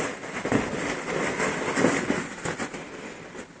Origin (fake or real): real